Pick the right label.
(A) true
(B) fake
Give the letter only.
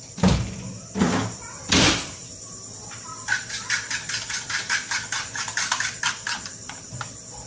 A